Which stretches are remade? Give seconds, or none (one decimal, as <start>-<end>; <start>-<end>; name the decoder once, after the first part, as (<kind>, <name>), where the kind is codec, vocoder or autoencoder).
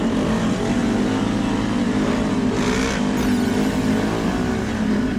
none